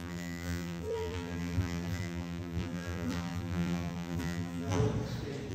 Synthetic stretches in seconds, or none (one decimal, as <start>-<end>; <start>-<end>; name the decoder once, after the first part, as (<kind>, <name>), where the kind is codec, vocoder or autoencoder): 0.0-4.8 (vocoder, BigVGAN v2)